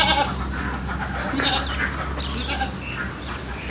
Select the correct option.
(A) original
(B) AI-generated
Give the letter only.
A